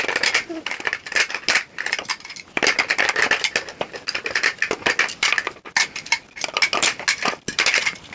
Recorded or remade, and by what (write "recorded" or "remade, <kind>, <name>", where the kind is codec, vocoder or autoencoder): recorded